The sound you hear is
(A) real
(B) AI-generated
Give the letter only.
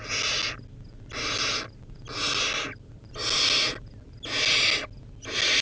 A